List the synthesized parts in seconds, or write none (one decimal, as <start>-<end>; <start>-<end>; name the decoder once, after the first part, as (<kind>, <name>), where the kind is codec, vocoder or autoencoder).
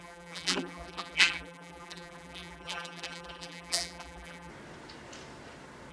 0.0-4.5 (vocoder, BigVGAN v2)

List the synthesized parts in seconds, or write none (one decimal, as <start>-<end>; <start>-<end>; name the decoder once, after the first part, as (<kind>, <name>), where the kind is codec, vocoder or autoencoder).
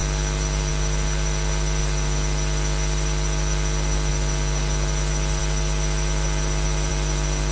none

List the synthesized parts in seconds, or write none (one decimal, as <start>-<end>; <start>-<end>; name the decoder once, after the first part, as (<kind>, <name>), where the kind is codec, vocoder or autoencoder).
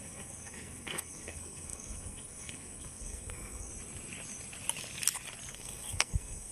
0.0-3.7 (codec, SNAC); 5.5-6.5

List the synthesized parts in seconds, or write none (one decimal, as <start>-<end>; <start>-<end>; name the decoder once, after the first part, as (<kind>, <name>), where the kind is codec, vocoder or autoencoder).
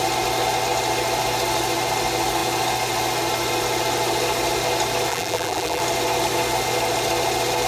5.1-5.8 (vocoder, BigVGAN v2)